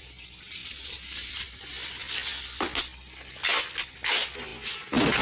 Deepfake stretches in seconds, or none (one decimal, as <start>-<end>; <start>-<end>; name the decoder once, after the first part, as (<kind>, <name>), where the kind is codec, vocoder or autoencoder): 0.6-1.3 (vocoder, BigVGAN v2)